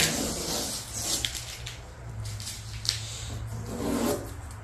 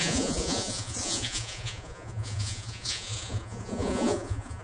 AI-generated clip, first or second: second